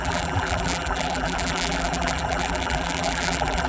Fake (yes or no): yes